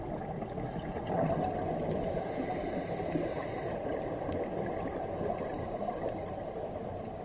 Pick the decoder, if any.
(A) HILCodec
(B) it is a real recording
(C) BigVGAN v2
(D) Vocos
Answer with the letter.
B